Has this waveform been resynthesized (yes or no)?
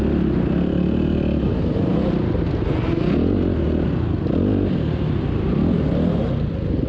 no